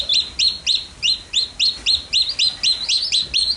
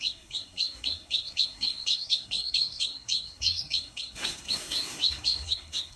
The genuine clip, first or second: first